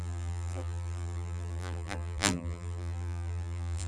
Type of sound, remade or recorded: remade